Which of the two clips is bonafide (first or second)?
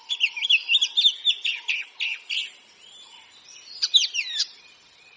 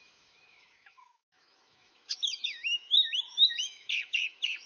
first